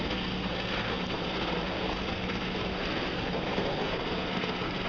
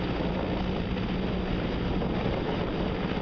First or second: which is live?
second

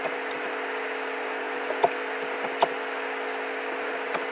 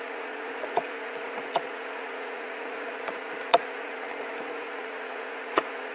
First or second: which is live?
first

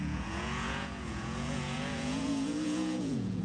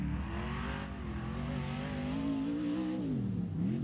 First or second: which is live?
second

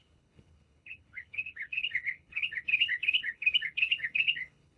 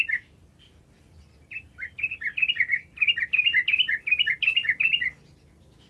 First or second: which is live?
second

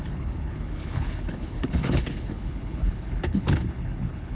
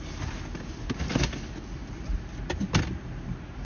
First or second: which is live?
second